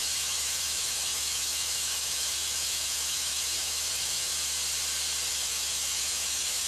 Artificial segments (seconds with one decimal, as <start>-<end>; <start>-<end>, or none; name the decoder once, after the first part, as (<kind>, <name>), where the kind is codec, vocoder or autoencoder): 0.0-4.3 (autoencoder, DAC-VAE); 5.3-6.7